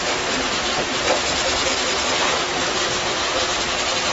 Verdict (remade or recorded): remade